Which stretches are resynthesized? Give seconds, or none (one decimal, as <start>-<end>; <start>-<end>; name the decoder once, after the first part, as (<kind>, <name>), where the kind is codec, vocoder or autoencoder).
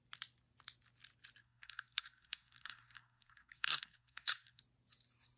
1.4-4.6 (codec, SNAC)